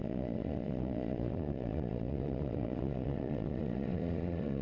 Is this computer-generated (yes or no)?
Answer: yes